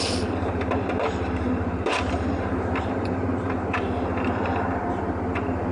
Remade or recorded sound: remade